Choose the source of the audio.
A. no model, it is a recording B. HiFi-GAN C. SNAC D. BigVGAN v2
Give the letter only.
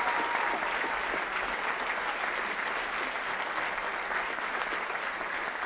A